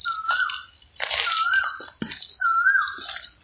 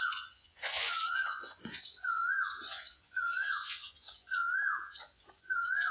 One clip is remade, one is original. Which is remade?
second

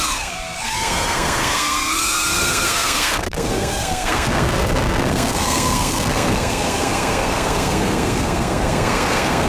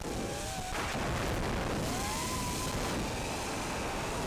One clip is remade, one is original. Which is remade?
first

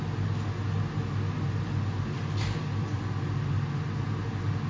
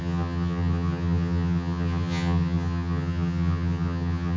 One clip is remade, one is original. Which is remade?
second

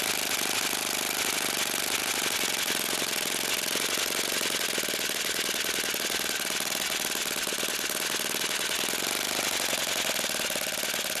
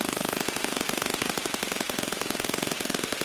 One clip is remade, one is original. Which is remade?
second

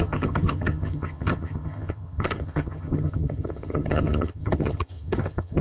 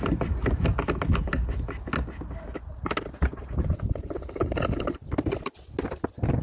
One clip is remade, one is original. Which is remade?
first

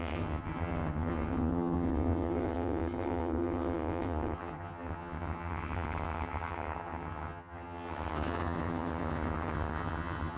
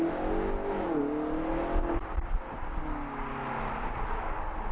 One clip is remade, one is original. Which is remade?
first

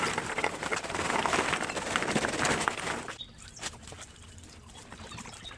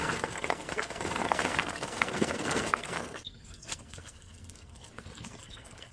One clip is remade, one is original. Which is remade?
second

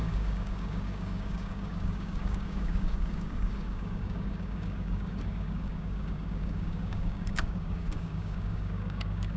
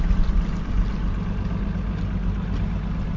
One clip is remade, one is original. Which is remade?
first